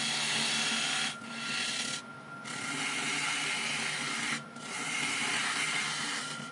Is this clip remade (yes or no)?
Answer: no